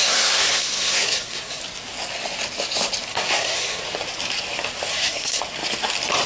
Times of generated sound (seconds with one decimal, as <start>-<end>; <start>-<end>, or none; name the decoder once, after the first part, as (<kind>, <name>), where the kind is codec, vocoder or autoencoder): 0.0-1.6 (codec, SNAC); 3.1-3.8; 4.9-5.4